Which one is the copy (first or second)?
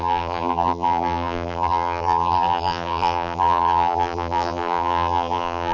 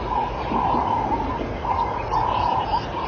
first